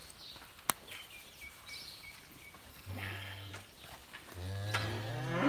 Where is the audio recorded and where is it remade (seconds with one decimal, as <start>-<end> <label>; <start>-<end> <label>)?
0.0-2.7 recorded; 2.7-3.5 remade; 3.5-5.5 recorded